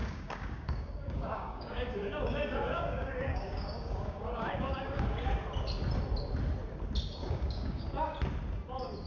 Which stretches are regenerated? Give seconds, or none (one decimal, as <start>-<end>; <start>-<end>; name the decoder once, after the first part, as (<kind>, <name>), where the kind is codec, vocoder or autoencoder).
0.0-5.3 (codec, DAC); 7.2-7.8